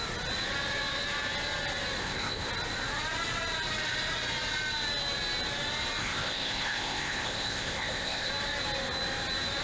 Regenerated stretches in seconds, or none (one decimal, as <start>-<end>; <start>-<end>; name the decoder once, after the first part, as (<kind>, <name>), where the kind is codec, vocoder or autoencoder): 2.0-2.5 (codec, ZipCodec); 6.0-8.3